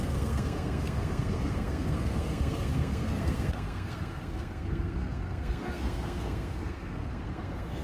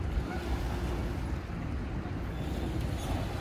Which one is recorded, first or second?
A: second